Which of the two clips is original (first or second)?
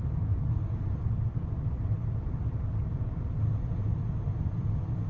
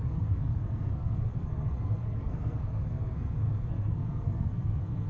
first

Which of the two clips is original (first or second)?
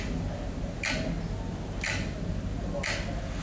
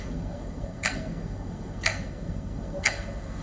first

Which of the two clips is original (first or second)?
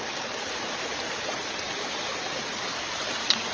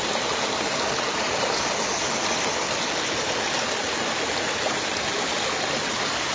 second